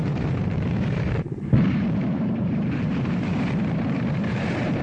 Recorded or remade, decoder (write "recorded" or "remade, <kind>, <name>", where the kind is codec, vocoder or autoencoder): remade, vocoder, BigVGAN v2